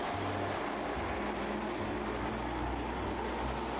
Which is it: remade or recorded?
recorded